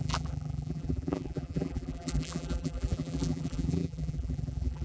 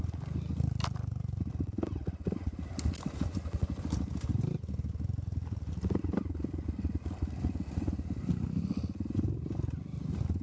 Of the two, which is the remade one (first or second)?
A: first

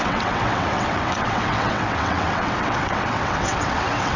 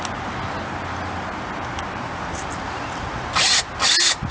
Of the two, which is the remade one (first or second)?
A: first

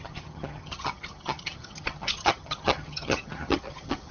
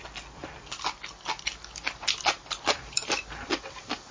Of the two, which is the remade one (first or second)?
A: first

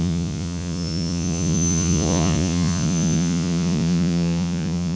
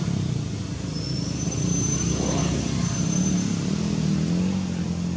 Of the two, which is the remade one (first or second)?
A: first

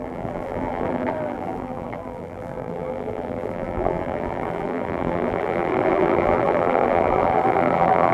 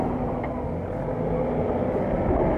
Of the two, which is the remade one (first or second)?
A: first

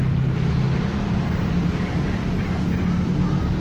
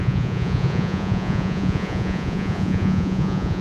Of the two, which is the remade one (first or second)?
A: second